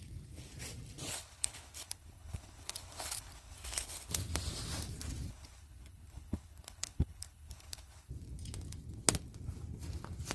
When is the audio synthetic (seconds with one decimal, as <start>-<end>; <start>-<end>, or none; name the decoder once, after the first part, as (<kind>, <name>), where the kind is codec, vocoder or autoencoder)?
1.1-4.1 (codec, HILCodec); 5.3-8.1